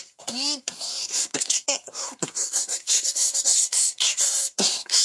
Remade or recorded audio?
remade